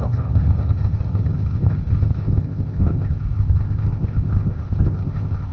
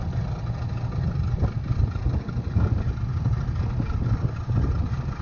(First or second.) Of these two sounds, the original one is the second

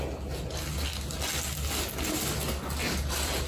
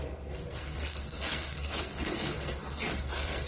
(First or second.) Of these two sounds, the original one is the first